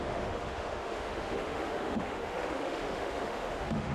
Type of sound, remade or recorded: remade